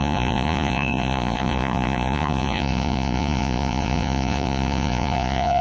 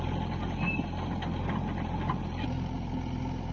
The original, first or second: second